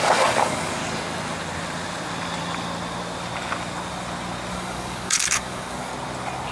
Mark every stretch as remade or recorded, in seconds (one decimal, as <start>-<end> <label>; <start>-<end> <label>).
0.0-0.8 remade; 0.8-4.5 recorded; 4.5-5.9 remade; 5.9-6.5 recorded